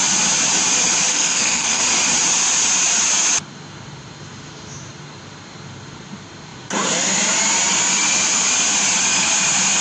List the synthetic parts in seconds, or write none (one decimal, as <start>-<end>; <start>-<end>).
1.1-1.8